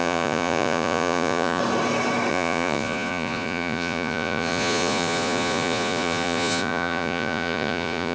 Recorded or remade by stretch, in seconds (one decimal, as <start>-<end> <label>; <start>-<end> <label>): 0.0-1.6 remade; 1.6-2.3 recorded; 2.3-8.1 remade